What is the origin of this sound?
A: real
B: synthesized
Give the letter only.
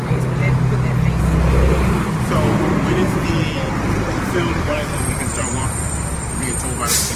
A